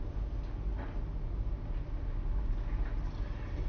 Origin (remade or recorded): recorded